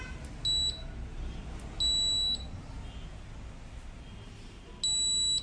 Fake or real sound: real